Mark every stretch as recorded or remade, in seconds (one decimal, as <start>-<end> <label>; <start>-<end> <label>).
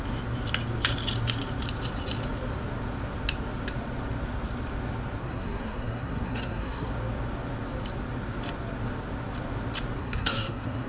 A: 0.0-5.2 recorded; 5.2-6.9 remade; 6.9-10.0 recorded; 10.0-10.9 remade